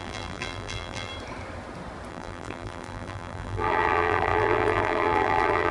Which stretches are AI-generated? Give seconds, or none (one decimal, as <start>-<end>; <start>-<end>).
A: 0.0-1.1; 2.1-5.7